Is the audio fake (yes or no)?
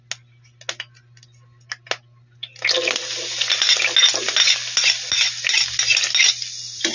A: no